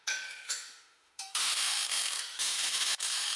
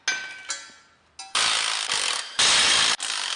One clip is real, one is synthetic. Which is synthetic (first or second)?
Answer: first